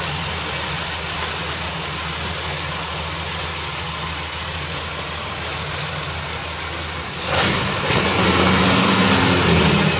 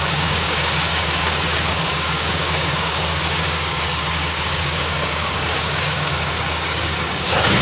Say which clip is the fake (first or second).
second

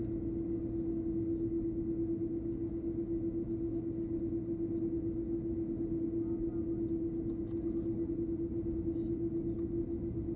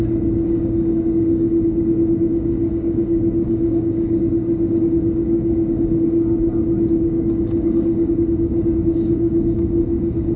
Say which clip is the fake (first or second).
second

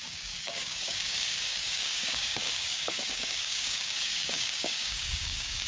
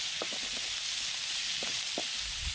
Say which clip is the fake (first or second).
first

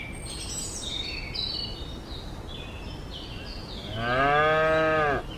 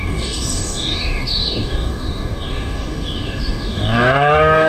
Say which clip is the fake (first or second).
second